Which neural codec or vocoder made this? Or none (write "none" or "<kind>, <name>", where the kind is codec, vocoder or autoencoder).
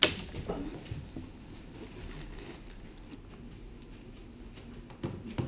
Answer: none